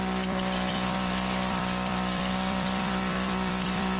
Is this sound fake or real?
fake